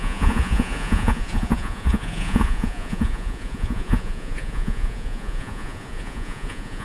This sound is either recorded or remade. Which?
remade